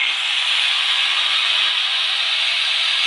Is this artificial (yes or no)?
yes